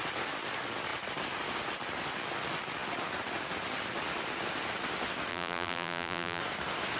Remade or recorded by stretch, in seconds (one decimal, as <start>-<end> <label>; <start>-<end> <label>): 0.0-5.3 recorded; 5.3-6.4 remade; 6.4-7.0 recorded